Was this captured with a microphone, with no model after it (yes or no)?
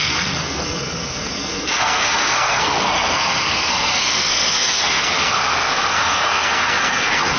no